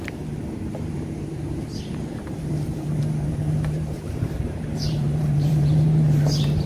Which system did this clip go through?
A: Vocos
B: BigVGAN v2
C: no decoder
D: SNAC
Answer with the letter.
B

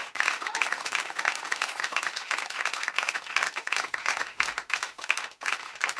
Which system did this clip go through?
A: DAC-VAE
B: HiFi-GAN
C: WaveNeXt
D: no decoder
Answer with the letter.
A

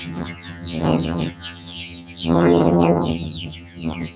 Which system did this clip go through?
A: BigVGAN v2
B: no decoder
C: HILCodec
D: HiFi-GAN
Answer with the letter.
D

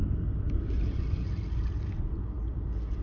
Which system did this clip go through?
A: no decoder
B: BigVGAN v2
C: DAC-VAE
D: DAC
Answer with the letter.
A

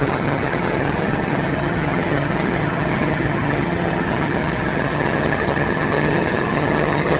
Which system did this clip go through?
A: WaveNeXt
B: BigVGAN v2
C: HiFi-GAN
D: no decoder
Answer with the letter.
C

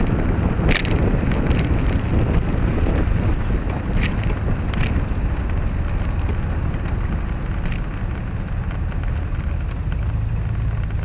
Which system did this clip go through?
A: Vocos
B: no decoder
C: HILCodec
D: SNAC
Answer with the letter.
B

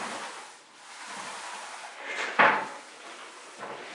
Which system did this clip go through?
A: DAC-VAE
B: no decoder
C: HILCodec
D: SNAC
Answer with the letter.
B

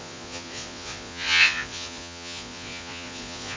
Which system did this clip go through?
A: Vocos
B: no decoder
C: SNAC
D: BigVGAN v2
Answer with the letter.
A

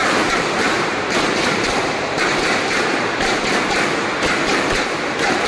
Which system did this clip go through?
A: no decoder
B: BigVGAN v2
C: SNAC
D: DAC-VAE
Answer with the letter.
B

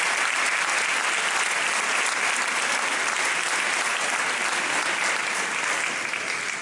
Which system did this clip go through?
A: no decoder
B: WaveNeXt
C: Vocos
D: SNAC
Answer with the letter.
A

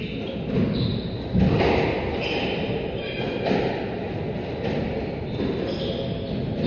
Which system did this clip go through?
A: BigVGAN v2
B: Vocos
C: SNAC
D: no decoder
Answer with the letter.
D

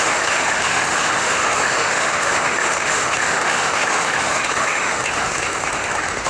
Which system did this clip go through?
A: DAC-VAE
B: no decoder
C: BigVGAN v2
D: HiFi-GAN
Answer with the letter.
A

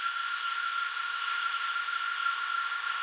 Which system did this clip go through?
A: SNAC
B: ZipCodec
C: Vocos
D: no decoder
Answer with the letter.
B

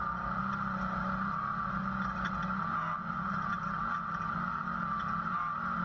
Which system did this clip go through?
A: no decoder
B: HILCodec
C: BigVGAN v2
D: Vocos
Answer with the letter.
A